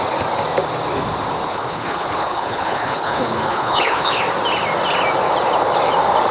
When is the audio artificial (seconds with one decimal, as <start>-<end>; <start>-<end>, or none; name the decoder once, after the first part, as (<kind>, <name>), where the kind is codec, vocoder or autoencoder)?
1.5-4.2 (codec, HILCodec)